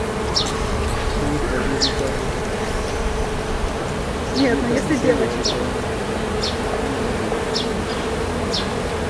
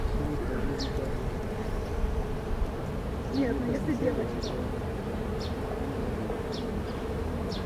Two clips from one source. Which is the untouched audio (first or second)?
first